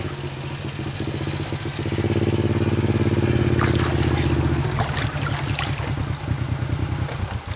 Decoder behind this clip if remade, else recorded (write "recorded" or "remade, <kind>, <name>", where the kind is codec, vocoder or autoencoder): recorded